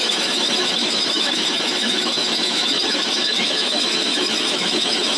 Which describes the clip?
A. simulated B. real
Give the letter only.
A